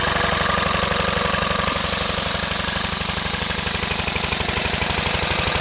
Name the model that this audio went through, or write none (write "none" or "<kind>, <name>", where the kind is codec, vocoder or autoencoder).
none